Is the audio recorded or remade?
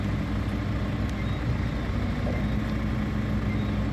recorded